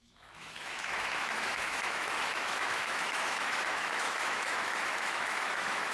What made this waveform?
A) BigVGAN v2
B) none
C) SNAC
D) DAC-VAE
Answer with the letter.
D